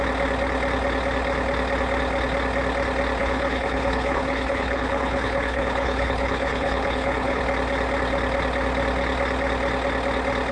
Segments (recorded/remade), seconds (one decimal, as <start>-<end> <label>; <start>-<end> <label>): 0.0-3.2 recorded; 3.2-7.4 remade; 7.4-10.5 recorded